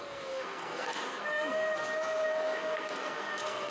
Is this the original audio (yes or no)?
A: no